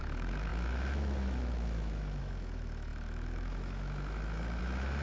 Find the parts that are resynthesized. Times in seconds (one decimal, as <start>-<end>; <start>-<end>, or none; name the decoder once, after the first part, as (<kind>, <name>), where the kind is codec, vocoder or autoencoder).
0.0-5.0 (autoencoder, DAC-VAE)